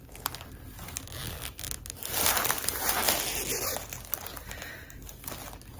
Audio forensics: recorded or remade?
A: recorded